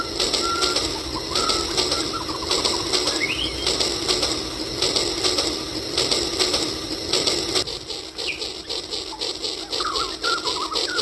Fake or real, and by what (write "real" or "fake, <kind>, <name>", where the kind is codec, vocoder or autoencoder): real